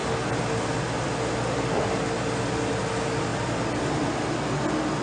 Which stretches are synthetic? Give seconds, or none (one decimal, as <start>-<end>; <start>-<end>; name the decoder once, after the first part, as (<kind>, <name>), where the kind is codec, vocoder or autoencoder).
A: none